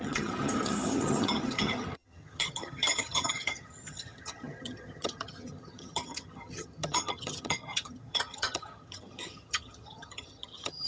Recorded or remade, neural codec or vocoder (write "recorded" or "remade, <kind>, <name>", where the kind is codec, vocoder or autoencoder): remade, vocoder, HiFi-GAN